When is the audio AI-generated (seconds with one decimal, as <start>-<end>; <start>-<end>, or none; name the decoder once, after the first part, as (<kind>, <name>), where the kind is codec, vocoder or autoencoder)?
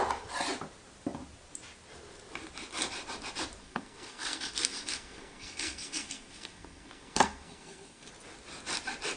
3.6-8.1 (codec, SNAC)